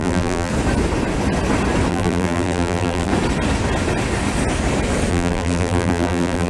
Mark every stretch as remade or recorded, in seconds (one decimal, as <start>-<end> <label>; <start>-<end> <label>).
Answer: 0.0-0.5 remade; 0.5-1.9 recorded; 1.9-3.1 remade; 3.1-5.1 recorded; 5.1-6.5 remade